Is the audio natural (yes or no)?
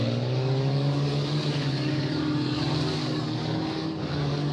no